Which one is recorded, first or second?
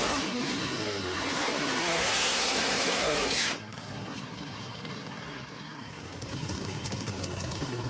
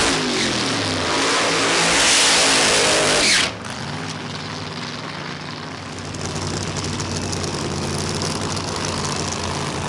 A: second